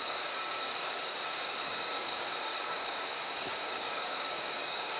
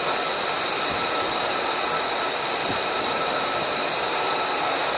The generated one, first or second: first